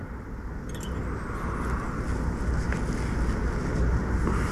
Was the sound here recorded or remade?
recorded